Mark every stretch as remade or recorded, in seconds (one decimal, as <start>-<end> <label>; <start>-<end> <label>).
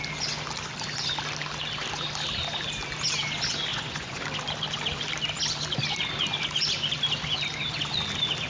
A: 0.0-3.7 recorded; 3.7-4.2 remade; 4.2-8.5 recorded